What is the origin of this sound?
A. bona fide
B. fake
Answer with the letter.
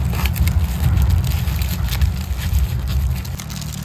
A